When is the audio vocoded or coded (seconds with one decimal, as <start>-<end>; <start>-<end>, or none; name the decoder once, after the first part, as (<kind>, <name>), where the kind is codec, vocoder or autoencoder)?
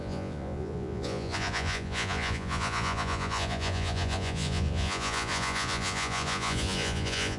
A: 0.0-7.4 (vocoder, Vocos)